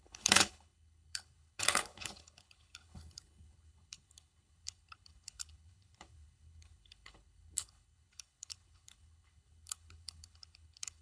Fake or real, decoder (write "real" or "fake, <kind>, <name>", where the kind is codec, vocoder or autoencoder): fake, codec, HILCodec